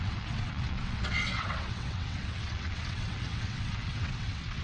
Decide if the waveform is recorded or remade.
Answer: remade